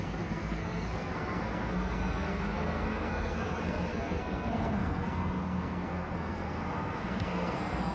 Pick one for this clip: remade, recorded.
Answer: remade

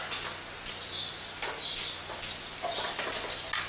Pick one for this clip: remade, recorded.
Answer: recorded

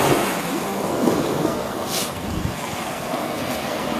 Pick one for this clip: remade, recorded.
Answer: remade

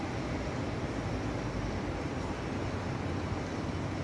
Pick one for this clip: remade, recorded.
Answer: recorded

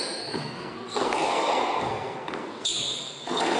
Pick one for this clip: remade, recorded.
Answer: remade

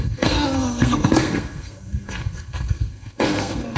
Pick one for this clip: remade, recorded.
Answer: remade